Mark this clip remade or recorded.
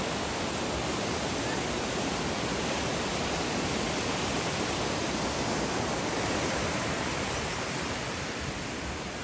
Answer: recorded